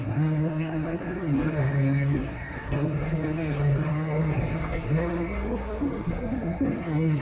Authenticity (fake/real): fake